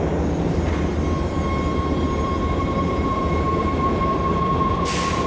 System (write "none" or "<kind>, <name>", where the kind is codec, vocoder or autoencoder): vocoder, BigVGAN v2